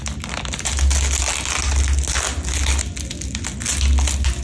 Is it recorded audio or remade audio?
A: recorded